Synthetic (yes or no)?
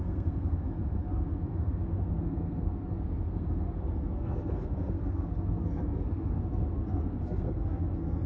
yes